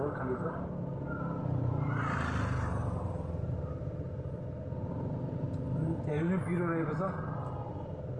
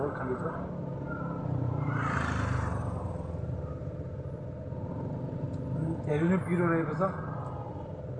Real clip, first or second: first